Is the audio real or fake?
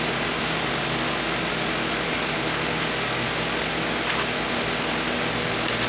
real